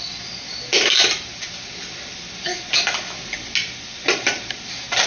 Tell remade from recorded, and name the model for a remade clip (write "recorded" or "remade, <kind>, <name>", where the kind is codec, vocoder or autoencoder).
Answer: recorded